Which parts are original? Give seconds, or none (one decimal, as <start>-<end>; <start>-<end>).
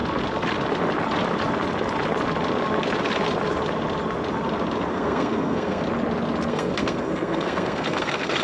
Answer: 0.0-4.9; 5.8-6.5